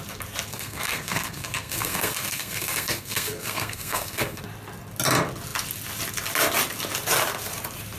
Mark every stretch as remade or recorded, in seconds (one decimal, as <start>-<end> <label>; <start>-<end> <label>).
0.0-0.5 recorded; 0.5-4.4 remade; 4.4-8.0 recorded

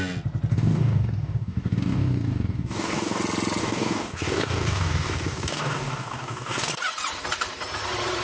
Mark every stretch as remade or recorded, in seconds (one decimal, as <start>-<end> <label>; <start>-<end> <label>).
0.0-0.5 recorded; 0.5-3.2 remade; 3.2-3.6 recorded; 3.6-6.7 remade; 6.7-8.2 recorded

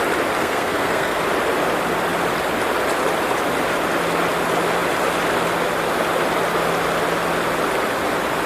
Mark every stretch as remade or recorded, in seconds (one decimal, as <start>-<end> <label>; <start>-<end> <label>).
0.0-0.4 recorded; 0.4-1.2 remade; 1.2-8.5 recorded

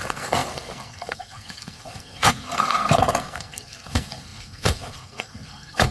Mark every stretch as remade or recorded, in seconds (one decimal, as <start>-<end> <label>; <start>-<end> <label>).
0.0-5.9 remade

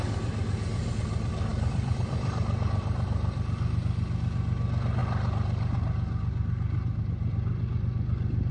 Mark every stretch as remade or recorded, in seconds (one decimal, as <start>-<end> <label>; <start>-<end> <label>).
0.0-1.5 recorded; 1.5-3.8 remade; 3.8-8.5 recorded